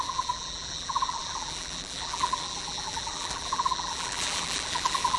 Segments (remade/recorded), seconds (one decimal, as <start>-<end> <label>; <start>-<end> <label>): 0.0-5.2 remade